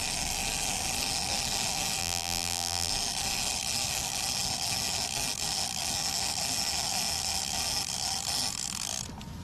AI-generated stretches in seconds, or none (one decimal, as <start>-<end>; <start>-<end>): 2.0-2.9